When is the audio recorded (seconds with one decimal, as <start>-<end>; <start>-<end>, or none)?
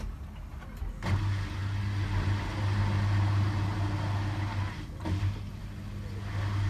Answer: 0.0-6.7